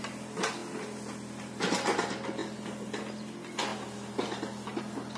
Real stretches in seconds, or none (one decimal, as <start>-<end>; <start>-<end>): 0.0-5.2